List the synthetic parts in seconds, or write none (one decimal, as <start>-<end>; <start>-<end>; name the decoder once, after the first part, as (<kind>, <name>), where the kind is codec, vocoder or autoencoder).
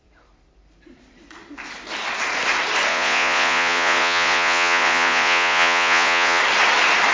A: 2.9-6.4 (vocoder, Vocos)